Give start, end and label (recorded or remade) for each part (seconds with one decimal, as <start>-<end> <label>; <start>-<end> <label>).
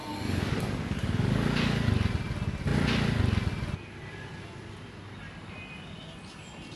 0.0-1.9 remade; 1.9-6.8 recorded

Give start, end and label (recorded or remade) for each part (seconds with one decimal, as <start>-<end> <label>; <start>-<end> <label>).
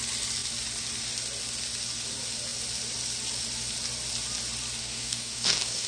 0.0-4.8 recorded; 4.8-5.9 remade